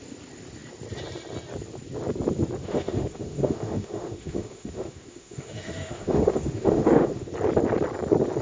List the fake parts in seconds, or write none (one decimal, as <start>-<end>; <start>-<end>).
2.6-7.3